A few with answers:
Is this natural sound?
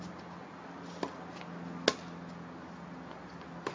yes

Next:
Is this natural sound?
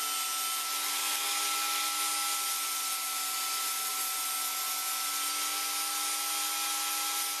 yes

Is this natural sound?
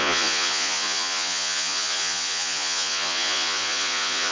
no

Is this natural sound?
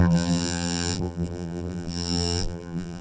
no